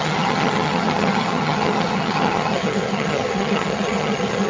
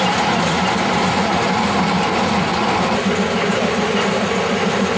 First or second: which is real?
second